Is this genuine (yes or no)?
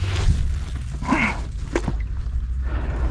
yes